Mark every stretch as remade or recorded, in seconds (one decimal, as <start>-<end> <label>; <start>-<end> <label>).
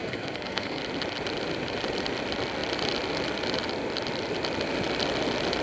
0.0-0.8 remade; 0.8-5.6 recorded